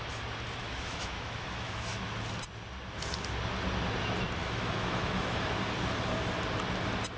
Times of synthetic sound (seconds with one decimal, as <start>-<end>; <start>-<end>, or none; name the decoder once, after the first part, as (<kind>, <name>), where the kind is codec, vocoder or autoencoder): 0.6-2.1 (autoencoder, DAC-VAE); 4.4-5.4